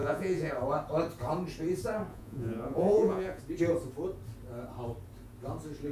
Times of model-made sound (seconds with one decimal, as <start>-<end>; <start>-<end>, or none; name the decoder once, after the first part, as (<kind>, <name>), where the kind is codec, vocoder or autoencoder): 0.0-0.5 (vocoder, Vocos); 2.1-3.4